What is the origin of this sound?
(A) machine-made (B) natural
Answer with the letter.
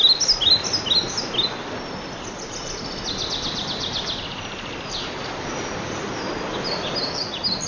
B